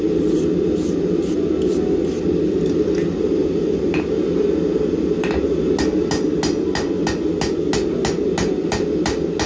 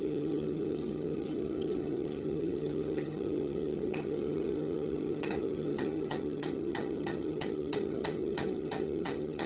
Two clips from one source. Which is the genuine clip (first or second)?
first